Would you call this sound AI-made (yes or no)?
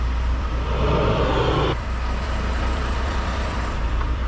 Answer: yes